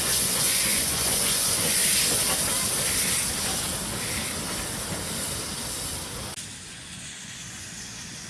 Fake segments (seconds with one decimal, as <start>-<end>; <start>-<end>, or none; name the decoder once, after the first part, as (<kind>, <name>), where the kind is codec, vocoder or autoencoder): 0.0-1.8 (vocoder, Vocos); 6.7-8.3